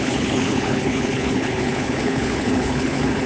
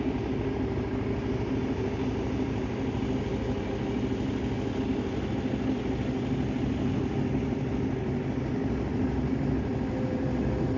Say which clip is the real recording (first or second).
second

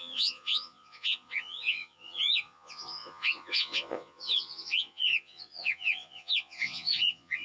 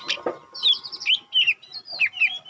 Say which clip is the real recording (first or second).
second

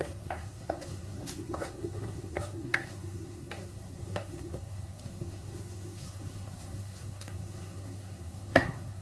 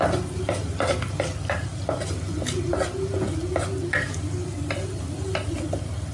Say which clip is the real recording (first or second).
second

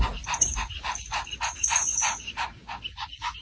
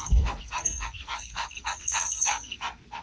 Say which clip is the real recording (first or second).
first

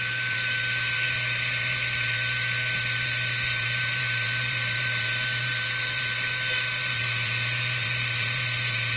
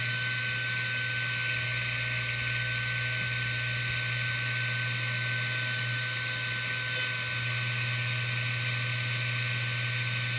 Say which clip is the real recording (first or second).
second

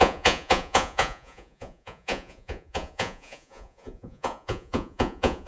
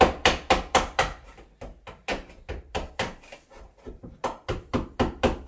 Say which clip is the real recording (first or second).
second